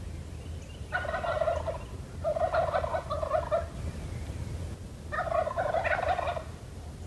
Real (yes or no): yes